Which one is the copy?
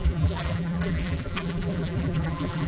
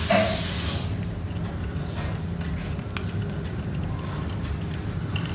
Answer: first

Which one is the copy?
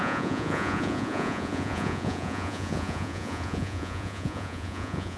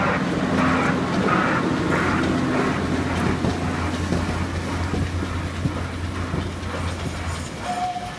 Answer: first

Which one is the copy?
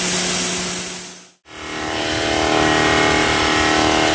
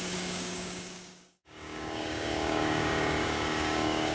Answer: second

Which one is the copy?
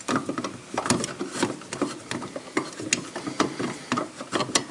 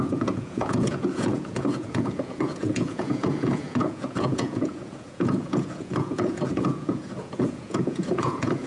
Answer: second